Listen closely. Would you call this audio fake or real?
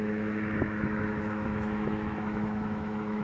fake